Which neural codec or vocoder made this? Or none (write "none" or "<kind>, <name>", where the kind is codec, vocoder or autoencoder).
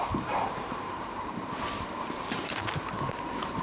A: vocoder, BigVGAN v2